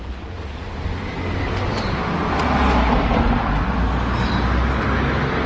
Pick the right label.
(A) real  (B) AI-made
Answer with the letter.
A